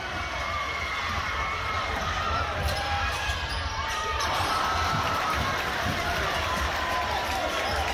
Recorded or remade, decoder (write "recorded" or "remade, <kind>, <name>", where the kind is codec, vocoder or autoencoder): remade, vocoder, BigVGAN v2